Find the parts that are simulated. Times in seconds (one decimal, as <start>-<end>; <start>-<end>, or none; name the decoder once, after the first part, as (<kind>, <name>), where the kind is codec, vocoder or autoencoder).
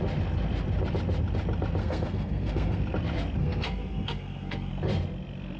1.8-2.8 (codec, SNAC); 3.4-4.7